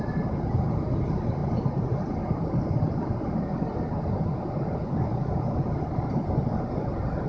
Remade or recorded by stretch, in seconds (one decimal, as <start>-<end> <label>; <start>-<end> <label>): 0.0-7.3 recorded